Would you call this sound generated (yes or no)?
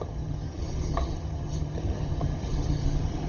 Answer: yes